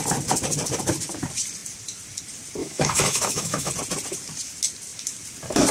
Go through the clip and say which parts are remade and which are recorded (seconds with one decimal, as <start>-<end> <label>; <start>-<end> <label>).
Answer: 0.0-2.6 recorded; 2.6-3.7 remade; 3.7-5.7 recorded